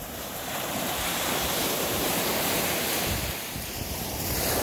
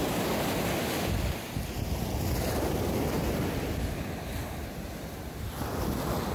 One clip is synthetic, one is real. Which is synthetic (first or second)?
first